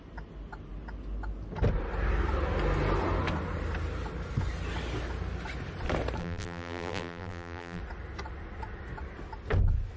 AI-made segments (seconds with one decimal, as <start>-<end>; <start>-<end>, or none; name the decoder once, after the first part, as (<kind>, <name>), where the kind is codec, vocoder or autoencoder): 6.2-7.8 (vocoder, BigVGAN v2)